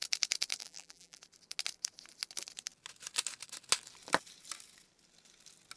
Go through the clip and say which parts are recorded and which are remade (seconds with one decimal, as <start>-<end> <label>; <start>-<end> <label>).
0.0-0.6 recorded; 0.6-1.2 remade; 1.2-5.8 recorded